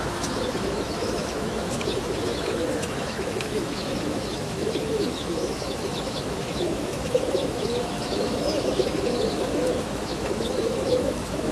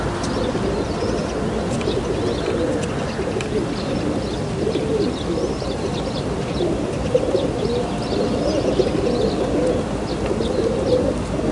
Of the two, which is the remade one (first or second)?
first